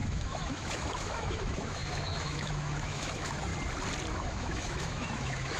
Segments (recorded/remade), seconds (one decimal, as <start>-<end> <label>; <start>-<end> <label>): 0.0-3.5 remade; 3.5-4.1 recorded; 4.1-5.6 remade

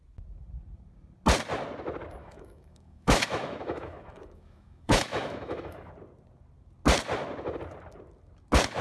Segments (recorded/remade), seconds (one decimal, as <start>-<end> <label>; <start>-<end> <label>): 0.0-2.2 recorded; 2.2-5.9 remade; 5.9-8.8 recorded